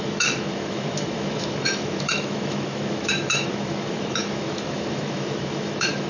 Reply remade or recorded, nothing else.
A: remade